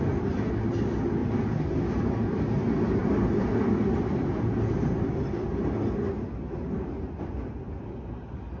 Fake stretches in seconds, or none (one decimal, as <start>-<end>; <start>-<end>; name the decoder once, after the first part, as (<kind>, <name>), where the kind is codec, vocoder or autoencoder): none